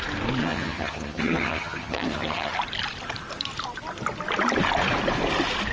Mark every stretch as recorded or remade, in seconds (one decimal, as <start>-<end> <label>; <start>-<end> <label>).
0.0-0.4 recorded; 0.4-2.5 remade; 2.5-5.7 recorded